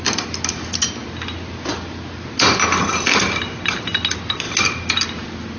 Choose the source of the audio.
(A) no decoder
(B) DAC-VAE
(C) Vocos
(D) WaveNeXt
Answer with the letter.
A